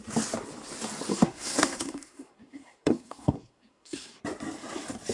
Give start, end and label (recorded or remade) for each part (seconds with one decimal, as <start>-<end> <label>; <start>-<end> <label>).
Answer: 0.0-1.1 recorded; 1.1-4.2 remade; 4.2-5.1 recorded